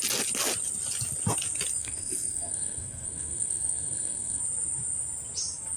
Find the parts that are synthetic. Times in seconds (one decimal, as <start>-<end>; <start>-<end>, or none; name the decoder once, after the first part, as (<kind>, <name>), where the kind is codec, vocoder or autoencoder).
1.8-4.4 (codec, SNAC)